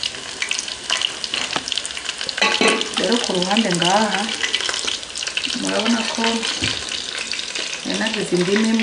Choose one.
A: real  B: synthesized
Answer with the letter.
A